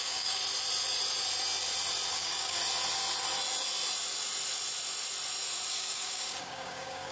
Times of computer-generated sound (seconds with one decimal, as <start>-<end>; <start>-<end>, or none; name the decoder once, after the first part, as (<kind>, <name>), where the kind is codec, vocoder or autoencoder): 0.0-0.4 (codec, DAC); 2.1-2.6; 5.7-7.1